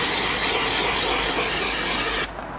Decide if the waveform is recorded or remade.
recorded